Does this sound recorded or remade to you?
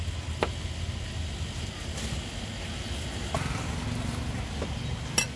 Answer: recorded